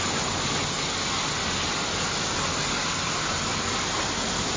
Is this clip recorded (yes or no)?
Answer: yes